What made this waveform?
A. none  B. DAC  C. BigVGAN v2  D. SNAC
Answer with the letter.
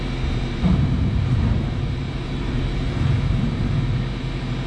C